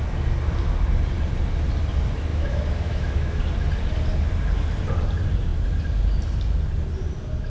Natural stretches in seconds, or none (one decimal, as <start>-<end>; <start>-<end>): 0.0-2.3; 3.4-7.5